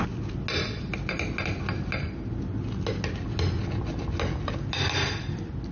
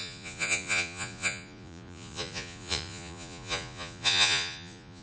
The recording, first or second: first